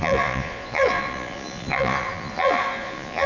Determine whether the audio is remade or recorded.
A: remade